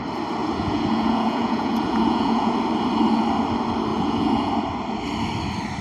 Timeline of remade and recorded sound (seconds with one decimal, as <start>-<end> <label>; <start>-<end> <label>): 0.0-0.4 recorded; 0.4-2.5 remade; 2.5-3.9 recorded; 3.9-4.5 remade; 4.5-5.8 recorded